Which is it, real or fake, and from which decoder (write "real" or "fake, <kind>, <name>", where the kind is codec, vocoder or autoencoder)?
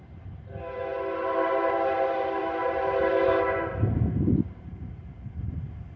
fake, vocoder, BigVGAN v2